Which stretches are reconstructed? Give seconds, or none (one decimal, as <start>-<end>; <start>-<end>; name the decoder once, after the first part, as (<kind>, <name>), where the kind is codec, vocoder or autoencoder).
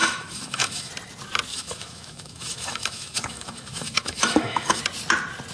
0.0-0.9 (autoencoder, DAC-VAE); 1.5-4.8